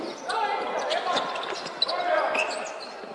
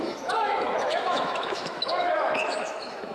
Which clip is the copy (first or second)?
second